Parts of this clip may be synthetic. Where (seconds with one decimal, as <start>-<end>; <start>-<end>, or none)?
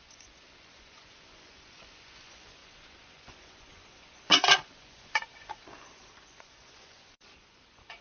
0.0-8.0